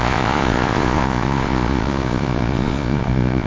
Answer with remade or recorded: remade